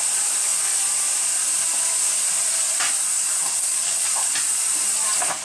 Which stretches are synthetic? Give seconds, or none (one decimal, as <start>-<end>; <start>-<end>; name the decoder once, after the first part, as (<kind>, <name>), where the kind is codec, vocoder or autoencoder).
3.4-4.1 (vocoder, WaveNeXt)